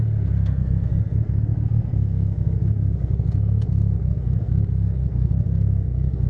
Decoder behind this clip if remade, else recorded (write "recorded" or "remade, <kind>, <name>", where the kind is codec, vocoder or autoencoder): remade, codec, SNAC